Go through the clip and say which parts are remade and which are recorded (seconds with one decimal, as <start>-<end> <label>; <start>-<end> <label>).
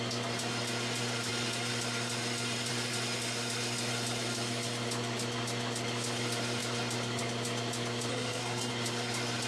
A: 0.0-8.1 recorded; 8.1-8.7 remade; 8.7-9.5 recorded